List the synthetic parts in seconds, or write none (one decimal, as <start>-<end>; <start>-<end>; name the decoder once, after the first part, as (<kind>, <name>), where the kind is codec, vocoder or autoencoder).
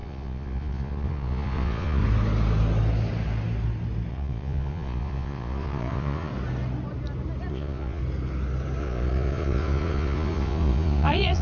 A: 0.0-2.0 (vocoder, Vocos); 4.1-6.3; 7.5-8.0; 8.8-11.4